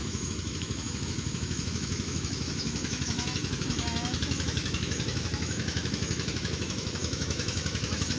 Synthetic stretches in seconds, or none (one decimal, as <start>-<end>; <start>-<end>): 0.0-8.2